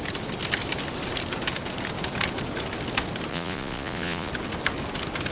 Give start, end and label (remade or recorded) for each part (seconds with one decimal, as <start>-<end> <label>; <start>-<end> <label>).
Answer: 0.0-3.3 recorded; 3.3-4.3 remade; 4.3-5.3 recorded